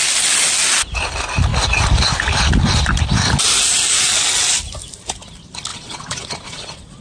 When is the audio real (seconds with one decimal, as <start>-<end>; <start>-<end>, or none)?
0.0-5.7